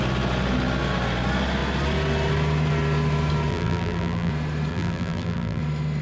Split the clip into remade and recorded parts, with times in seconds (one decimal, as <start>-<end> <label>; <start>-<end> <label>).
0.0-3.5 recorded; 3.5-4.3 remade; 4.3-4.7 recorded; 4.7-5.6 remade; 5.6-6.0 recorded